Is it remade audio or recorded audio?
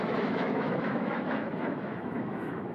remade